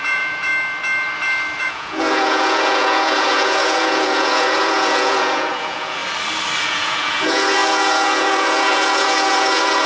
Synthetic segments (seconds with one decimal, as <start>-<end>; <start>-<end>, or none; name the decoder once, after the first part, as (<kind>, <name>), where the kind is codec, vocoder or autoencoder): 0.0-0.5 (vocoder, Vocos); 1.6-6.0; 6.6-9.9